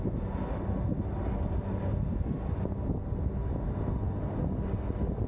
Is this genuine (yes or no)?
yes